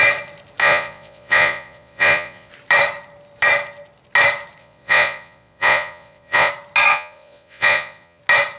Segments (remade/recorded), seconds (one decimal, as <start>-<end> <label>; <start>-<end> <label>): 0.0-0.6 recorded; 0.6-2.5 remade; 2.5-4.6 recorded; 4.6-6.5 remade; 6.5-6.9 recorded; 6.9-8.2 remade; 8.2-8.6 recorded